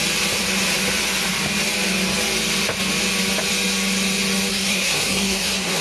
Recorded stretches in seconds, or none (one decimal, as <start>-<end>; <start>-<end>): 0.0-4.5